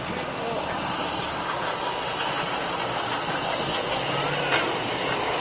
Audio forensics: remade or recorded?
recorded